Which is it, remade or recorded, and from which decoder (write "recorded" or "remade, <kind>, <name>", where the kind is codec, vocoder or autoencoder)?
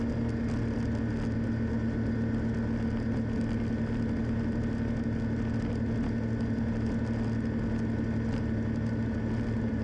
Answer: recorded